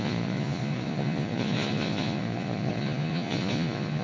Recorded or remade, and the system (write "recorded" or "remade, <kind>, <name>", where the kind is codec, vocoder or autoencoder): remade, vocoder, Vocos